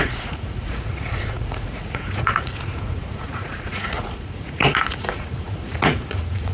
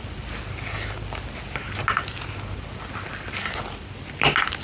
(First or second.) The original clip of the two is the second